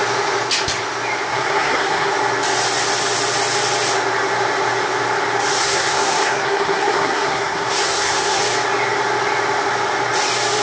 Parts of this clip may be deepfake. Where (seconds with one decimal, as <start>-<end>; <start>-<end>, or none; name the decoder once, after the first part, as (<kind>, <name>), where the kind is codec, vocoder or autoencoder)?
1.3-2.1 (codec, SNAC); 5.6-8.4